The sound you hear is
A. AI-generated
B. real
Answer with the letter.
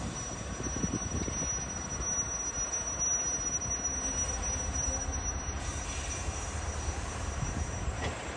A